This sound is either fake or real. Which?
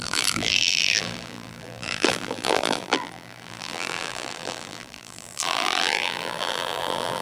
fake